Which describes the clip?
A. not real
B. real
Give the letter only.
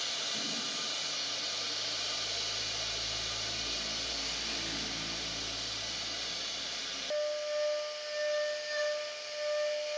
B